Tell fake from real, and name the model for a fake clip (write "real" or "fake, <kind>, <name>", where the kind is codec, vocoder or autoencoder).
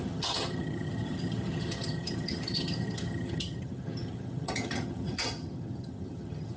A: fake, vocoder, HiFi-GAN